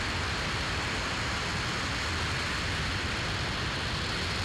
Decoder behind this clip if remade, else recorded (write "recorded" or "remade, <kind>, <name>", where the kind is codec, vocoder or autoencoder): recorded